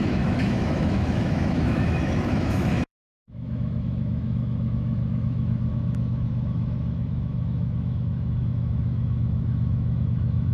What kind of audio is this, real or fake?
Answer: fake